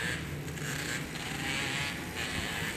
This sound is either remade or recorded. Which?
remade